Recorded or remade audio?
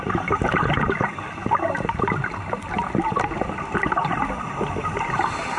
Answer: recorded